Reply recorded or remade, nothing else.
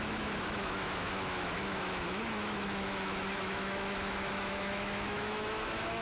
remade